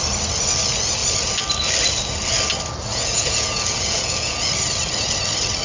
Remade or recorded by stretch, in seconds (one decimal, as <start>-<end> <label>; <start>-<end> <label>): 0.0-2.9 recorded; 2.9-4.5 remade; 4.5-5.6 recorded